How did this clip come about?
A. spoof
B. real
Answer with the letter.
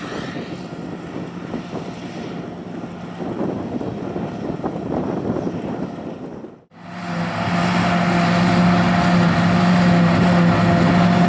B